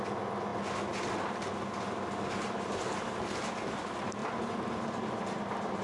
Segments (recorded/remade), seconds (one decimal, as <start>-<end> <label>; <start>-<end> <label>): 0.0-4.2 recorded; 4.2-5.8 remade